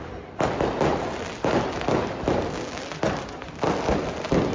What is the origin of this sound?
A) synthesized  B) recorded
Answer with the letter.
B